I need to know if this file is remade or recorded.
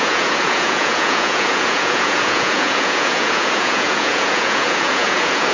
remade